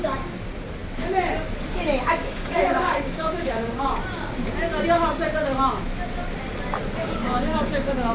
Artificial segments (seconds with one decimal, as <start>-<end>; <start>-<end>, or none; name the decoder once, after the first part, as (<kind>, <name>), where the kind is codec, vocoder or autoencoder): 2.2-4.0 (codec, DAC); 7.0-8.1